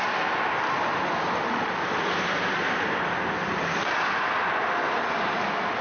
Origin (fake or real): real